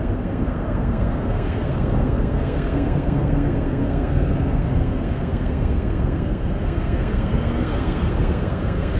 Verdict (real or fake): fake